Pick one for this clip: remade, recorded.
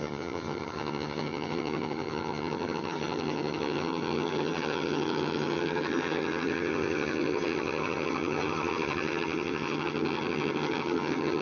remade